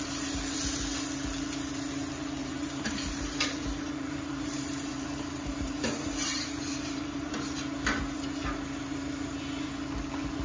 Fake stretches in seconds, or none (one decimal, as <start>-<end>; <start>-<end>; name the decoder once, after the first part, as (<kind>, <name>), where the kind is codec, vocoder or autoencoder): 2.4-7.3 (vocoder, BigVGAN v2)